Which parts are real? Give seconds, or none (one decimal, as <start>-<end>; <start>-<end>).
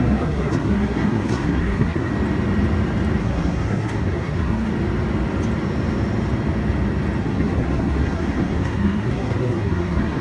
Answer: 2.1-3.2; 4.7-7.2